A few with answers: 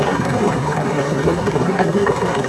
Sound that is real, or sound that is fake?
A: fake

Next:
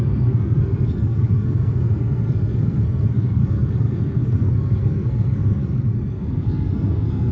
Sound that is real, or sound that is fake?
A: fake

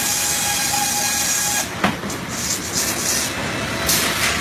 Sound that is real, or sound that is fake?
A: real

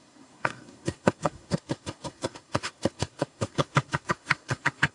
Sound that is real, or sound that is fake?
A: fake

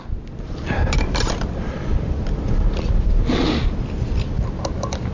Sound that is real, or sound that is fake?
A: real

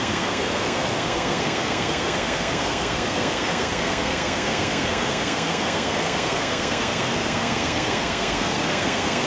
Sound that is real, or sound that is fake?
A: fake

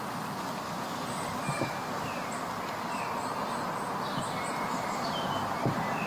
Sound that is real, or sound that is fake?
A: real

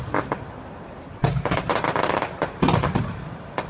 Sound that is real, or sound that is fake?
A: real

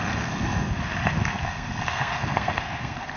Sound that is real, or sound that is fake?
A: fake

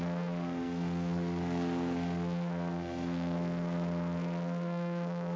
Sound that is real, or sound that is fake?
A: fake